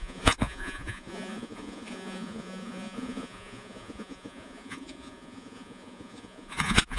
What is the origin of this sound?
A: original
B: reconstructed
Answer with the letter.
B